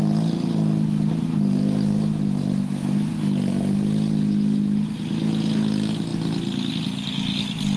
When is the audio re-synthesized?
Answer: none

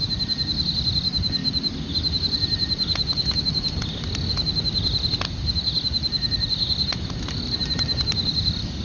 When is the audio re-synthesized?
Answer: none

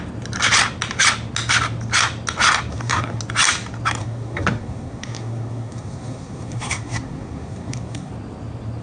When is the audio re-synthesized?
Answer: 2.7-3.2 (codec, SNAC); 4.0-8.1

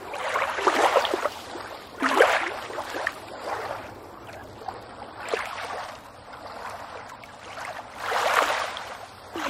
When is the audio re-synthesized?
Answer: 0.0-4.4 (vocoder, BigVGAN v2); 8.6-9.5